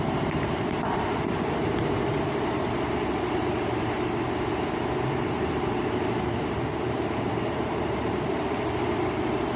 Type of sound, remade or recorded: remade